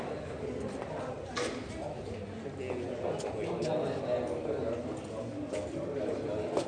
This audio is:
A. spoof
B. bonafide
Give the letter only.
B